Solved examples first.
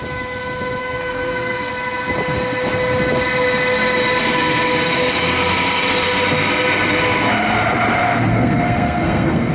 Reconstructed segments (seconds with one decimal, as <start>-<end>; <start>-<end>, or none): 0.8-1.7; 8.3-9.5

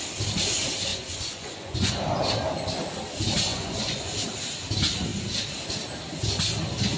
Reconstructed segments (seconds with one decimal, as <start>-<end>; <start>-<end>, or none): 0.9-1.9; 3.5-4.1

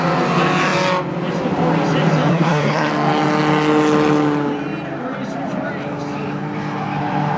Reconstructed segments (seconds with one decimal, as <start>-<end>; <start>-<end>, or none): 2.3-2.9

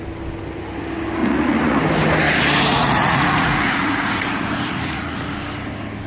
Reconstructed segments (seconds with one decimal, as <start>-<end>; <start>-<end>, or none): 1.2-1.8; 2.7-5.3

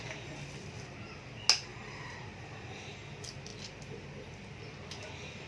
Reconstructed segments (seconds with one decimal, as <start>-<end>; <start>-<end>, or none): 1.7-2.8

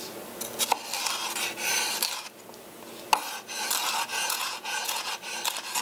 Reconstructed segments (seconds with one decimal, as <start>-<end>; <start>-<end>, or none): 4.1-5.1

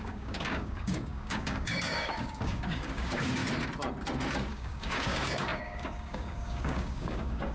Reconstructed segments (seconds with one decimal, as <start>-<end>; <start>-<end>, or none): 0.0-3.4; 4.5-7.5